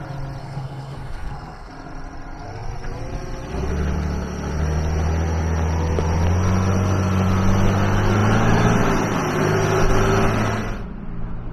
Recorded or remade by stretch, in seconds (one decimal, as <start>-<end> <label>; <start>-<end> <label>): 0.0-0.4 recorded; 0.4-1.7 remade; 1.7-11.5 recorded